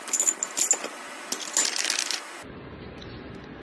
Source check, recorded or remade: recorded